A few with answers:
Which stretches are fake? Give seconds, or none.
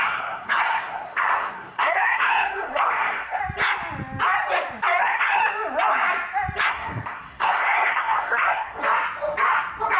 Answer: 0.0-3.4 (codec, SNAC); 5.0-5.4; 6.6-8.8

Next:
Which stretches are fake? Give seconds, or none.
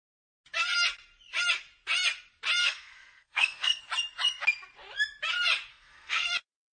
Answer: 2.6-3.8 (codec, SNAC); 5.7-6.3